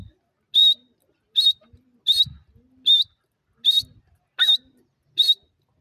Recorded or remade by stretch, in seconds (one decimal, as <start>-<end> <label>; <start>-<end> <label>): 0.0-5.8 recorded